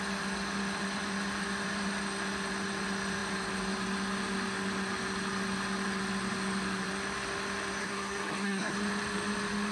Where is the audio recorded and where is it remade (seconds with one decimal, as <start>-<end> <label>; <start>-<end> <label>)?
0.0-7.8 recorded; 7.8-8.7 remade; 8.7-9.7 recorded

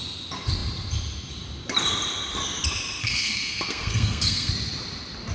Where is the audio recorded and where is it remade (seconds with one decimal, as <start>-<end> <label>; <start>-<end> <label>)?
0.0-3.0 recorded; 3.0-4.5 remade; 4.5-5.3 recorded

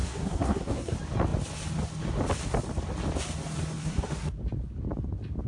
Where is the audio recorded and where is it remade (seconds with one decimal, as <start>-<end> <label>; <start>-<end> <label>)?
0.0-0.9 remade; 0.9-3.8 recorded; 3.8-4.4 remade; 4.4-5.5 recorded

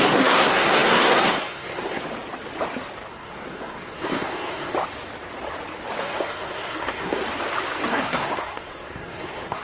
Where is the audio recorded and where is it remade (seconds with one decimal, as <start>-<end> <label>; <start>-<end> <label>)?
0.0-2.0 remade; 2.0-3.1 recorded; 3.1-4.7 remade; 4.7-6.0 recorded; 6.0-7.2 remade; 7.2-7.9 recorded; 7.9-9.6 remade

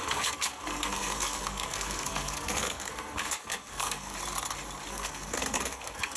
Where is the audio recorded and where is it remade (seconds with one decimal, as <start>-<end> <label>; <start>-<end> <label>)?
0.0-4.1 remade; 4.1-4.9 recorded; 4.9-6.2 remade

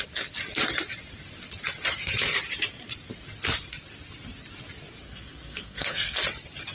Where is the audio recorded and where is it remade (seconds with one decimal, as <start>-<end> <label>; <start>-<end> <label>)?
0.0-5.0 recorded; 5.0-6.2 remade; 6.2-6.7 recorded

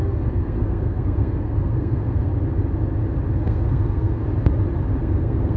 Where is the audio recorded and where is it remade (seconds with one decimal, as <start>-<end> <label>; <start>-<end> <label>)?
0.0-2.3 remade; 2.3-3.4 recorded; 3.4-4.2 remade; 4.2-5.0 recorded; 5.0-5.6 remade